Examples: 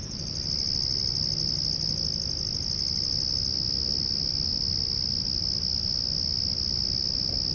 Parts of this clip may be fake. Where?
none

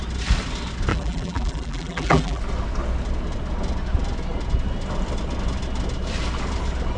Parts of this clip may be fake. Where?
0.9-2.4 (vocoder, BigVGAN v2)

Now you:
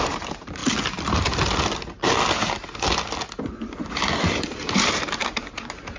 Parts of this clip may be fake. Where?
0.0-0.6 (vocoder, BigVGAN v2); 4.2-6.0

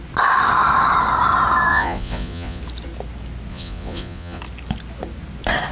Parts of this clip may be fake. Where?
1.7-2.6 (vocoder, Vocos); 3.5-4.4

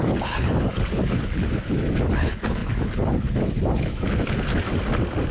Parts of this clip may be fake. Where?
0.0-4.5 (codec, HILCodec)